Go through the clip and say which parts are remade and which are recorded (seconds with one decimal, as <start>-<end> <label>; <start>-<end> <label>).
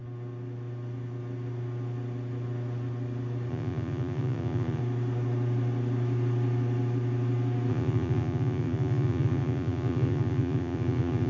0.0-3.5 recorded; 3.5-4.8 remade; 4.8-7.7 recorded; 7.7-11.3 remade